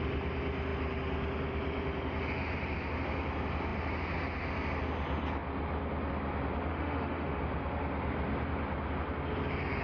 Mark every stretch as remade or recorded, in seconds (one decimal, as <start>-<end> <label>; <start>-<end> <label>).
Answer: 0.0-6.7 recorded; 6.7-7.4 remade; 7.4-9.8 recorded